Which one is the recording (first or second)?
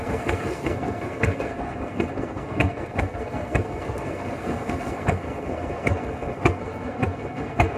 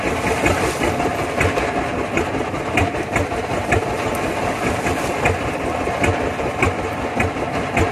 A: second